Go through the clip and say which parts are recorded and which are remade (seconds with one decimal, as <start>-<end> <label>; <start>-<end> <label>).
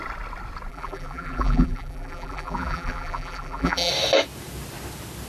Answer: 0.0-0.7 recorded; 0.7-3.9 remade; 3.9-5.3 recorded